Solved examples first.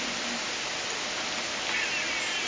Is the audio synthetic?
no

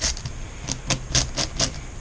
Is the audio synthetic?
no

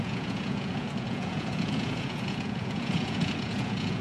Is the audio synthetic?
yes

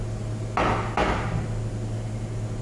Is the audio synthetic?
no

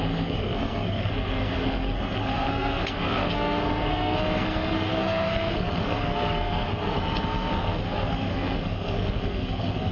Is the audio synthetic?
yes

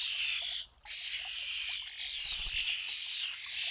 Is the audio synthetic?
no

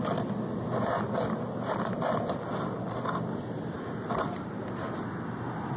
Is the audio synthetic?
no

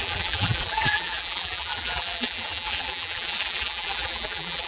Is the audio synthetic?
yes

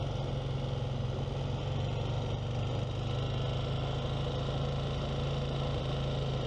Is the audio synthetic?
no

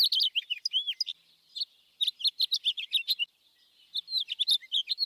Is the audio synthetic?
no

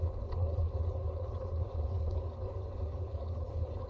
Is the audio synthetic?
yes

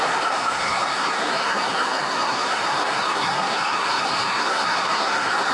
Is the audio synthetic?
yes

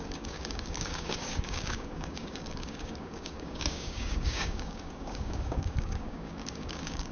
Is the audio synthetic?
yes